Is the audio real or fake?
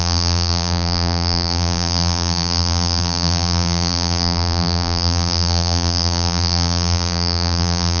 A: fake